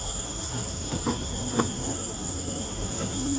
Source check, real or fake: fake